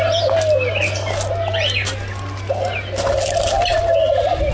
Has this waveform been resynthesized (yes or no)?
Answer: no